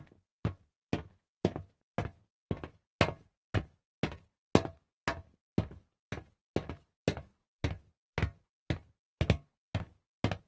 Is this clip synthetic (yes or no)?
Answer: no